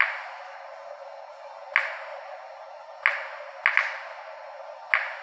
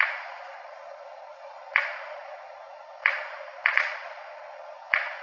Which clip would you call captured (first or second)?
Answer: first